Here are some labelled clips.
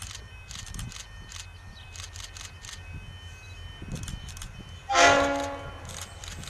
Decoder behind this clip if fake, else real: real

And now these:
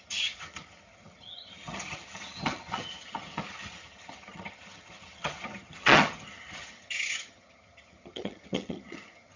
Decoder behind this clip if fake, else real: fake, vocoder, HiFi-GAN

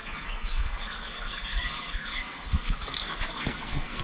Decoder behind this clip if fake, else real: fake, codec, SNAC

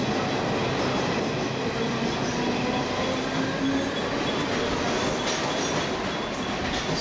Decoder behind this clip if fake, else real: real